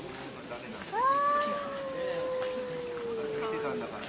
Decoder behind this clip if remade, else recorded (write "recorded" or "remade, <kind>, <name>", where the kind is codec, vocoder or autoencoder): recorded